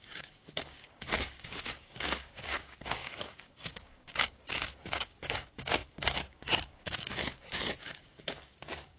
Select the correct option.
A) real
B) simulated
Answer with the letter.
B